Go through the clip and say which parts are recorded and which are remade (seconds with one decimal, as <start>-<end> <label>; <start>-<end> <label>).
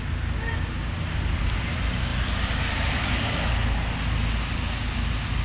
0.0-5.4 recorded